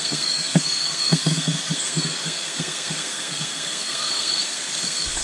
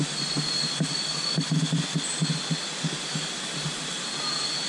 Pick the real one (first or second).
second